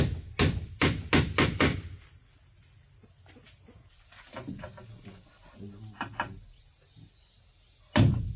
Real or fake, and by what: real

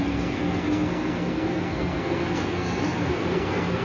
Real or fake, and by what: fake, codec, SNAC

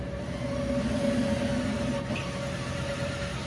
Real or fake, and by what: real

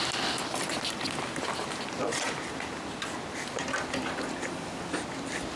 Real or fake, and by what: real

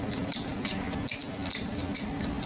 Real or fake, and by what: real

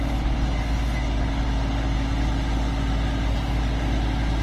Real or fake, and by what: real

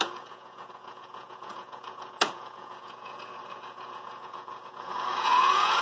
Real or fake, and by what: fake, vocoder, Vocos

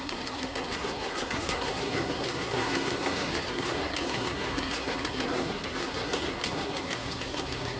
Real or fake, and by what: fake, codec, SNAC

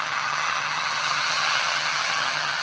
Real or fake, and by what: fake, vocoder, HiFi-GAN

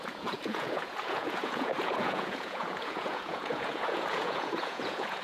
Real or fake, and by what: fake, vocoder, Vocos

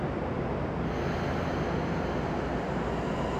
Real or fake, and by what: real